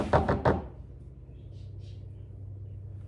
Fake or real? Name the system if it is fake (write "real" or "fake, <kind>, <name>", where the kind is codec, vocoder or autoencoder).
real